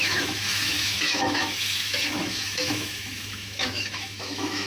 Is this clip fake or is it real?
fake